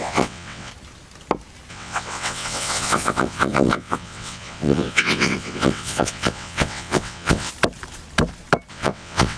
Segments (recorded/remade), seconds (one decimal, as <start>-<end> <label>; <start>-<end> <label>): 0.0-0.7 remade; 0.7-1.7 recorded; 1.7-7.5 remade; 7.5-8.7 recorded; 8.7-9.4 remade

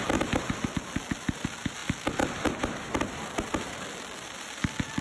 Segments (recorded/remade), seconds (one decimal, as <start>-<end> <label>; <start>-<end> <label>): 0.0-1.8 recorded; 1.8-5.0 remade

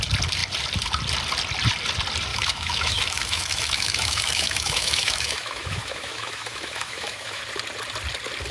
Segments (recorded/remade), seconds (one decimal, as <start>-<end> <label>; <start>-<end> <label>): 0.0-2.3 recorded; 2.3-7.4 remade; 7.4-8.5 recorded

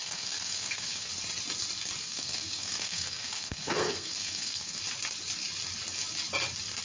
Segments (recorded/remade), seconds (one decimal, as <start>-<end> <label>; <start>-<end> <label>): 0.0-1.1 remade; 1.1-2.0 recorded; 2.0-4.8 remade; 4.8-6.8 recorded

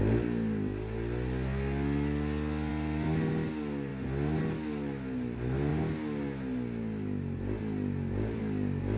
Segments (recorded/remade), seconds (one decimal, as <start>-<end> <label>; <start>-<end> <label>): 0.0-9.0 recorded